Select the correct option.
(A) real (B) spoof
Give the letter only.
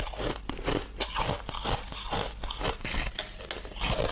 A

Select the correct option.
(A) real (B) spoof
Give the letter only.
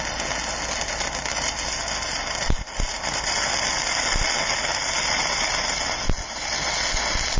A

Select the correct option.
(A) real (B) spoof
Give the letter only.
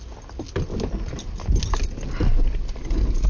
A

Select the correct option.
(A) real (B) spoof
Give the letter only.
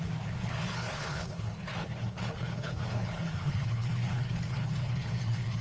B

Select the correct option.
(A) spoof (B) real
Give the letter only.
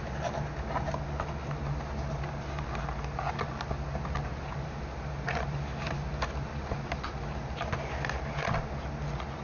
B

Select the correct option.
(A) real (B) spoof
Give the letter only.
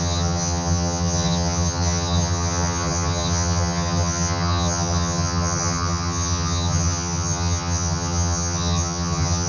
B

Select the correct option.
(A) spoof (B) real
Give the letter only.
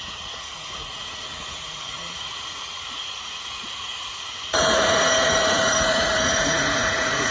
A